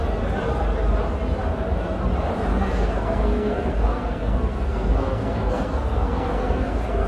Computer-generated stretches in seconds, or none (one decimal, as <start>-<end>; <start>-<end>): 2.5-7.1